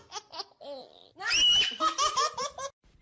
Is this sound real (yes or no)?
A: yes